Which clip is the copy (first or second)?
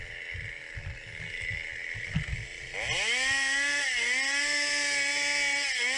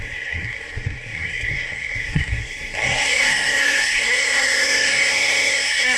second